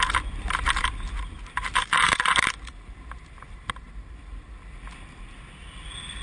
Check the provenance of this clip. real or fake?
real